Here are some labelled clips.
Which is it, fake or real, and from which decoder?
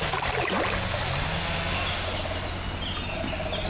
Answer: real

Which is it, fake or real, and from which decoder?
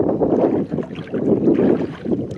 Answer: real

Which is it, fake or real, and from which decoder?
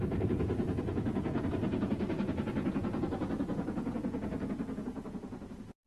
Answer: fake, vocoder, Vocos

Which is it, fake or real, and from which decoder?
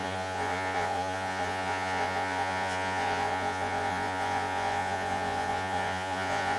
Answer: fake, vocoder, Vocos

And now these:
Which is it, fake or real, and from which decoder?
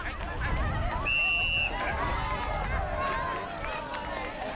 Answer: real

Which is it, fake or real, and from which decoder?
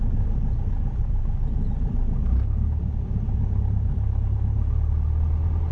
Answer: real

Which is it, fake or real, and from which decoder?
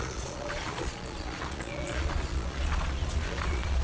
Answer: fake, vocoder, Vocos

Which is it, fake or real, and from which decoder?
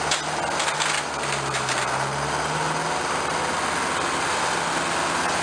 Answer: real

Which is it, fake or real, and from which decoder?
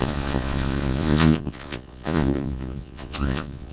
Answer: fake, vocoder, Vocos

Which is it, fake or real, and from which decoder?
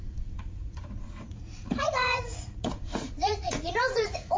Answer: fake, vocoder, Vocos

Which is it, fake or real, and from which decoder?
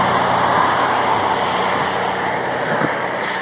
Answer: real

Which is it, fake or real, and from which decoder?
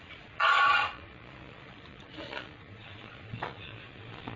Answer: fake, vocoder, Vocos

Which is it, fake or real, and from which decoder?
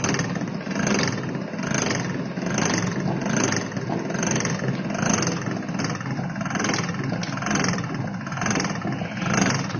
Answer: real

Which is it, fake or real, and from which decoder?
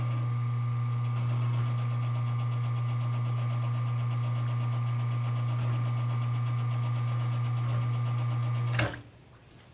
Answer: real